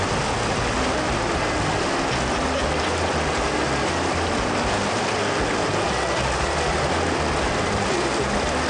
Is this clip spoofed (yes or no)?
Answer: no